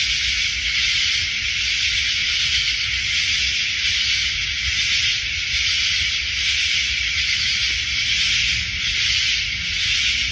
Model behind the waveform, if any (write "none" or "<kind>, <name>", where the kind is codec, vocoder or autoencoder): none